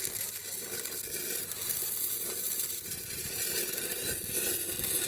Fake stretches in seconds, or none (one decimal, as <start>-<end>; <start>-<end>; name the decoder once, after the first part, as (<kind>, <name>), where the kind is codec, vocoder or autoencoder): 0.4-3.5 (vocoder, BigVGAN v2)